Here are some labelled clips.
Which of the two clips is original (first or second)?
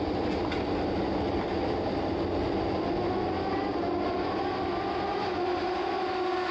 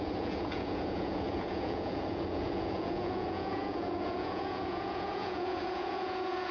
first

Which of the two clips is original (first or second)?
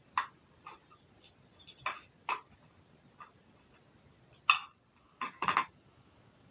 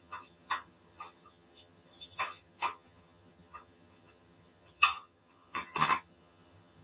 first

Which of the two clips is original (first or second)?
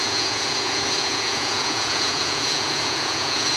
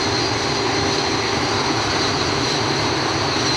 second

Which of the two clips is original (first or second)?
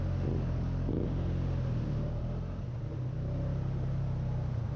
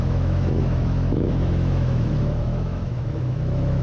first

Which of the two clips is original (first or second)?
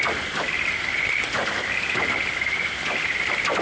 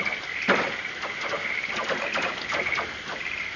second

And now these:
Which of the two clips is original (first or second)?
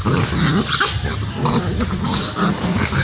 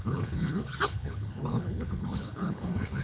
first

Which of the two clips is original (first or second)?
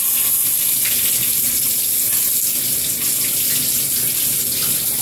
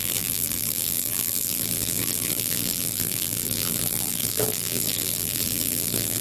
first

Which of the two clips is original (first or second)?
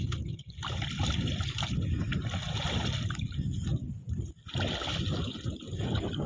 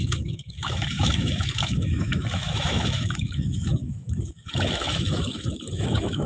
first